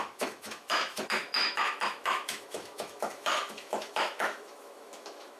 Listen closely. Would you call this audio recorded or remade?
remade